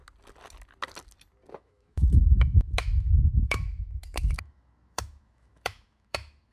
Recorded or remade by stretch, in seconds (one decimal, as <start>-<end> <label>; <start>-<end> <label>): 0.0-1.5 recorded; 1.5-6.5 remade